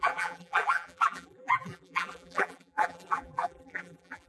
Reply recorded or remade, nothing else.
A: remade